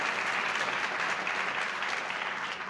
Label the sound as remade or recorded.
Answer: recorded